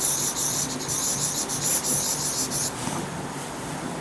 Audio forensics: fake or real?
real